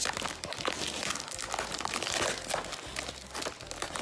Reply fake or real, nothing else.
real